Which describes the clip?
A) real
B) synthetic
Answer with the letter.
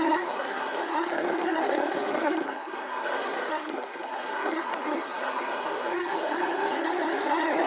B